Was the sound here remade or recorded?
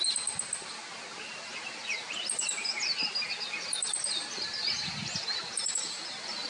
recorded